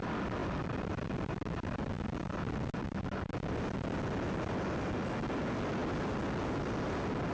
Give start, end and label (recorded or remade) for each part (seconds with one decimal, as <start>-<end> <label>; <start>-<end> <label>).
0.0-7.3 recorded